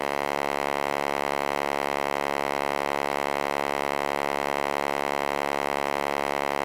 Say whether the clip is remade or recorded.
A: recorded